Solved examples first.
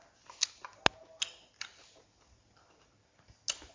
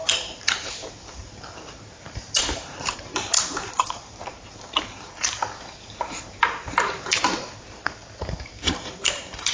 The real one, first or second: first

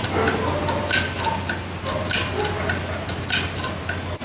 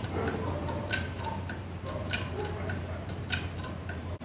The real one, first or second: first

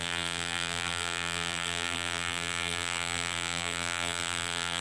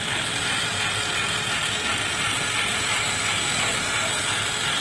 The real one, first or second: second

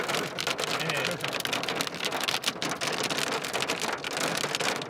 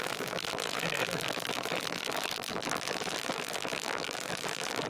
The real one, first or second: first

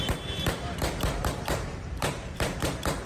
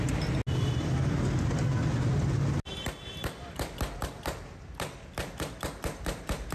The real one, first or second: second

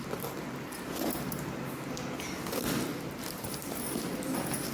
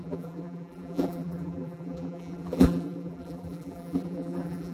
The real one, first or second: first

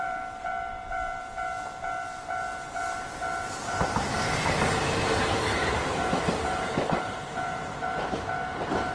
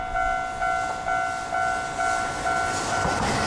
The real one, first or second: second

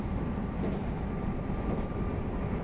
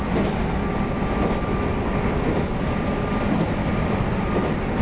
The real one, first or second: second